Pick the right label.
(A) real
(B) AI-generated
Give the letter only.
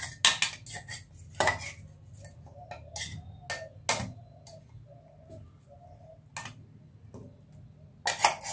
A